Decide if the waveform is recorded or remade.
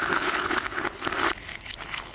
remade